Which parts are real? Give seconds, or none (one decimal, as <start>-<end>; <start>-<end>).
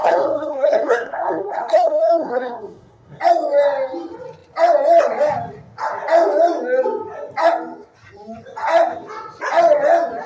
3.2-10.3